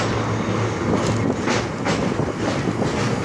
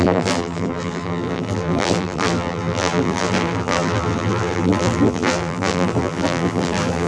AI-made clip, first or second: second